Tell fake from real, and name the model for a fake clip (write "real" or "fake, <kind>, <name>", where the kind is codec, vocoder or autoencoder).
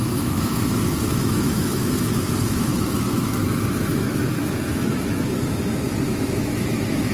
fake, autoencoder, DAC-VAE